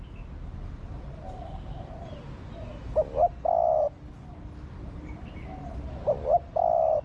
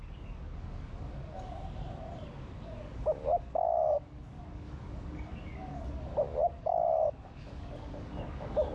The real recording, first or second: first